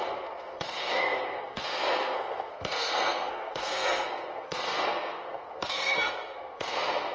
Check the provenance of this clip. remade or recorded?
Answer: remade